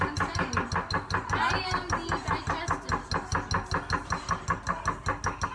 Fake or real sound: real